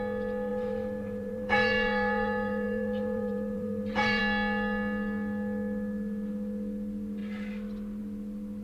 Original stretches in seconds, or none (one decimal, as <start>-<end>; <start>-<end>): 0.0-0.5; 4.2-8.6